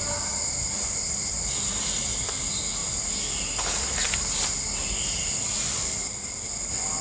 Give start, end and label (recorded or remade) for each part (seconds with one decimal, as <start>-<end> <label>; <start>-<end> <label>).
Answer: 0.0-7.0 recorded